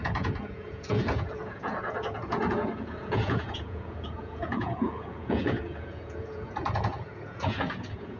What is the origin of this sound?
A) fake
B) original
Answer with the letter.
A